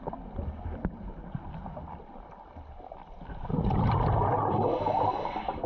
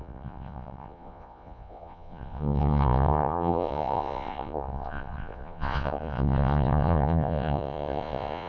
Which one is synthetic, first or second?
second